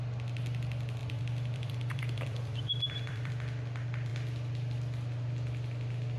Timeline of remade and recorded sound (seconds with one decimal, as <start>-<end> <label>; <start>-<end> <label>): 0.0-1.0 recorded; 1.0-3.3 remade; 3.3-6.2 recorded